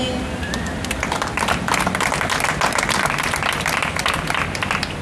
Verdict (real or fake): real